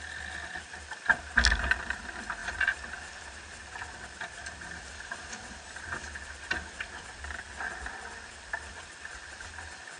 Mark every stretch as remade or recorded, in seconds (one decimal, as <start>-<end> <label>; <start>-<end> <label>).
0.0-10.0 recorded